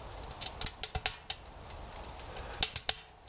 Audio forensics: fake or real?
real